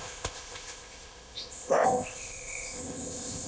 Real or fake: fake